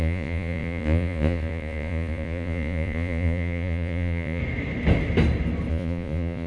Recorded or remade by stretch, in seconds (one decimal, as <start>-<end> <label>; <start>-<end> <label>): 0.0-4.4 remade; 4.4-5.7 recorded; 5.7-6.5 remade